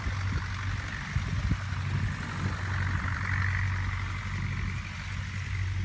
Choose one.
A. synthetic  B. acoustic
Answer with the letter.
B